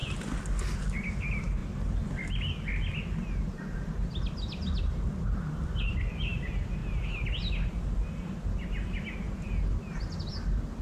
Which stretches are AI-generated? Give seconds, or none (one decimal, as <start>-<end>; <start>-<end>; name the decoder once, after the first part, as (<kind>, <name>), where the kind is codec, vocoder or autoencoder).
none